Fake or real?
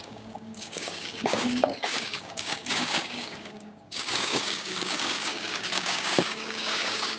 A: fake